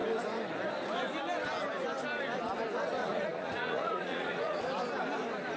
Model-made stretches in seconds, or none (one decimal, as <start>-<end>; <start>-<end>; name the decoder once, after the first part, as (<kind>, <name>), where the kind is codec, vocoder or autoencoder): 3.0-4.6 (vocoder, Vocos)